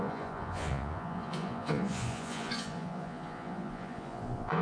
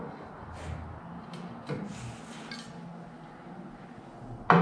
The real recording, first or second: second